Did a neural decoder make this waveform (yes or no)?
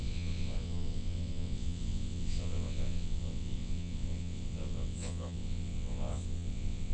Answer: yes